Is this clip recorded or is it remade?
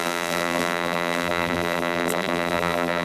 remade